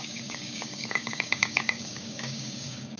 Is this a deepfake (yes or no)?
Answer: yes